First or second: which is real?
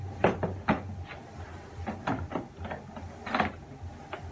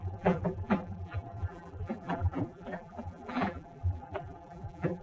first